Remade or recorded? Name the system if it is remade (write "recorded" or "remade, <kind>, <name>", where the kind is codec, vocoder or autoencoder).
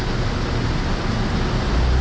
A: recorded